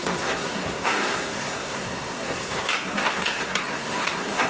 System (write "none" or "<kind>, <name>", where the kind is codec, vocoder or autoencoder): codec, SNAC